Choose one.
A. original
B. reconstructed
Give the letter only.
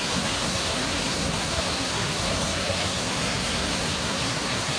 B